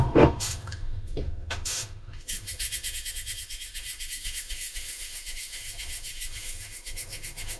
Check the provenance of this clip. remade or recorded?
remade